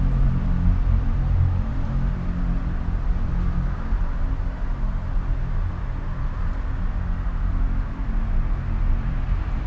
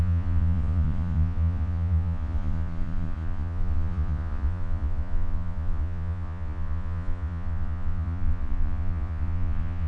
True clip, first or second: first